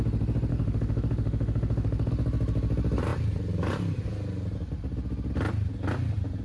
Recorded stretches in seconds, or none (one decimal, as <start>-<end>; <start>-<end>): 0.0-0.5; 2.1-6.4